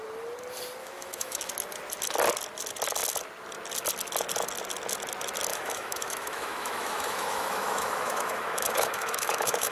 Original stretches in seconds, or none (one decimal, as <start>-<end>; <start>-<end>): 0.0-0.8; 1.5-5.5